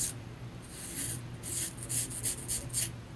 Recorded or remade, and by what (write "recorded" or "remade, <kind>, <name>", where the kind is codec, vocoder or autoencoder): recorded